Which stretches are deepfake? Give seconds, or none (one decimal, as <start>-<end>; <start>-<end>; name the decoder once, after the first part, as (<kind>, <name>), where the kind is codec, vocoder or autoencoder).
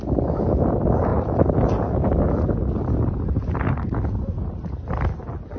none